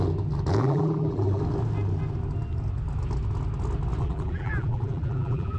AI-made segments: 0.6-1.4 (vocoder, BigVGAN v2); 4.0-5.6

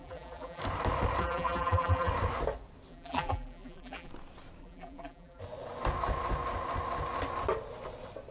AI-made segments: 0.0-0.6 (vocoder, BigVGAN v2); 1.2-2.1; 2.9-4.1; 4.6-5.4

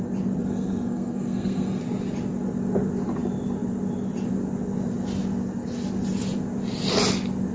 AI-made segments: 0.4-1.8 (codec, SNAC)

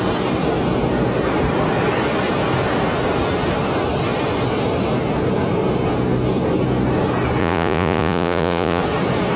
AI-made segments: 7.4-8.8 (vocoder, Vocos)

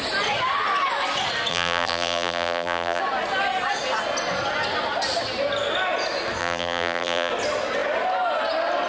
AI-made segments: 1.5-3.0 (vocoder, BigVGAN v2); 6.4-7.3

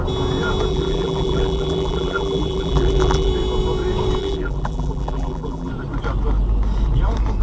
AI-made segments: 0.7-3.3 (vocoder, BigVGAN v2); 4.2-5.7

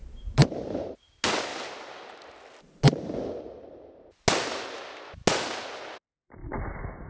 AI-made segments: 0.0-1.0 (vocoder, BigVGAN v2)

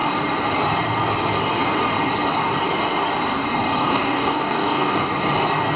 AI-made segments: 3.8-5.1 (codec, DAC)